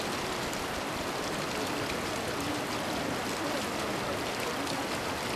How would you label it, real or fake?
real